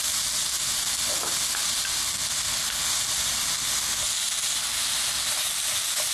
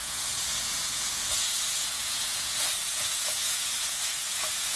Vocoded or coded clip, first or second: second